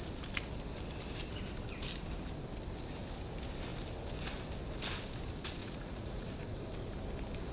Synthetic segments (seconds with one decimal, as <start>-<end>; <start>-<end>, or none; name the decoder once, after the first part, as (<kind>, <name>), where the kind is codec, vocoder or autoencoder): 5.6-6.3 (vocoder, Vocos)